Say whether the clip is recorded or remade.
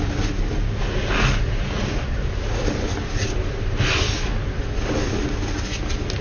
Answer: recorded